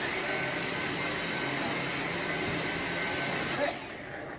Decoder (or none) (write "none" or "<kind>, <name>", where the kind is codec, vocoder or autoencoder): none